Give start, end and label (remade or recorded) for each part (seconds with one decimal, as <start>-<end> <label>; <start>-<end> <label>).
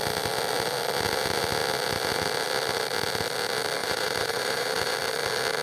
0.0-3.8 recorded; 3.8-5.1 remade; 5.1-5.6 recorded